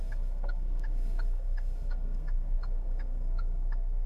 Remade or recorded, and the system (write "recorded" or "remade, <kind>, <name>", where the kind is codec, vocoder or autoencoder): remade, codec, SNAC